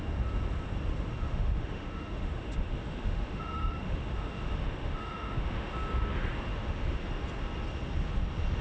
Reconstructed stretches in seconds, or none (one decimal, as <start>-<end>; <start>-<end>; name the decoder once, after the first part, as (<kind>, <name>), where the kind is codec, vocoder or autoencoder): 1.1-5.7 (autoencoder, DAC-VAE); 6.5-7.0